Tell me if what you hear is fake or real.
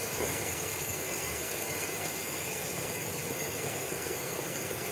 fake